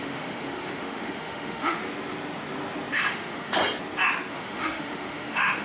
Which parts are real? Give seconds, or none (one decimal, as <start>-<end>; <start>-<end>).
1.8-2.9; 3.6-4.3